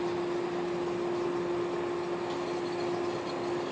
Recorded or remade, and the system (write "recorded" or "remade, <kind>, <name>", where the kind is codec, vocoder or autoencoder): recorded